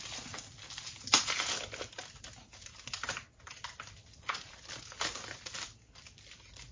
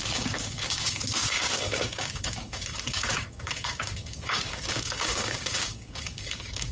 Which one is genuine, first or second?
first